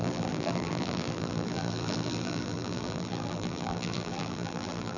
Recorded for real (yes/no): no